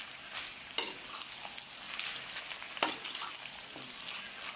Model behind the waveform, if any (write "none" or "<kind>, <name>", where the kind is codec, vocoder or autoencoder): none